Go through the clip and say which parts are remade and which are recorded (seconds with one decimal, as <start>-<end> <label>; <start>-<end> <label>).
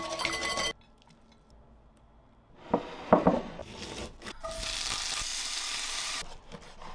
0.0-6.9 recorded